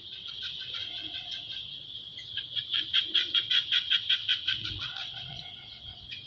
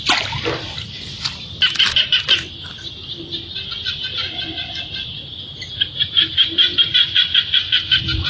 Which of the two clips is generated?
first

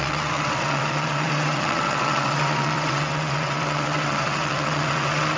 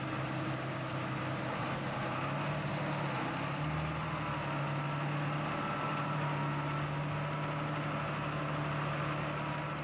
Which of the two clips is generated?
first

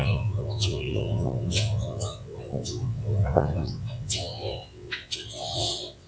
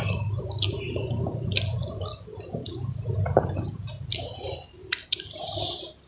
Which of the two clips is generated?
first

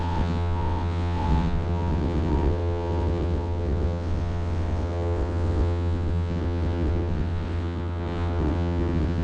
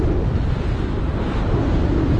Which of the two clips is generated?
first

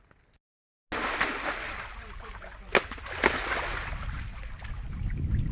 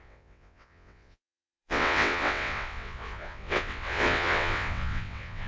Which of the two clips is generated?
second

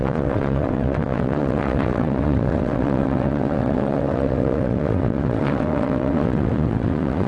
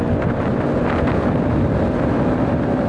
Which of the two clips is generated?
first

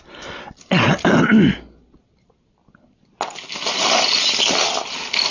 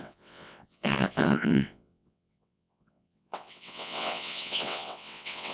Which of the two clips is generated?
second